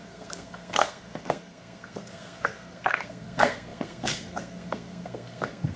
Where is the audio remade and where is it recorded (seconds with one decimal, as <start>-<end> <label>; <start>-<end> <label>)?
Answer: 0.0-5.8 remade